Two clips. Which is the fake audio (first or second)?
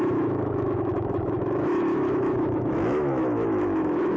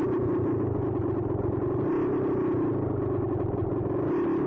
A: first